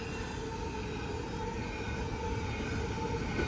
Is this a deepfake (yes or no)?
no